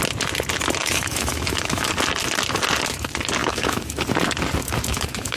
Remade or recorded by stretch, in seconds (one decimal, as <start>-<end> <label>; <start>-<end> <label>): 0.0-0.8 recorded; 0.8-1.9 remade; 1.9-3.4 recorded; 3.4-4.0 remade; 4.0-4.6 recorded; 4.6-5.4 remade